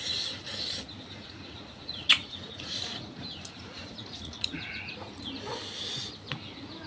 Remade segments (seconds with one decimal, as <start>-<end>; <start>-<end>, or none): 1.2-5.3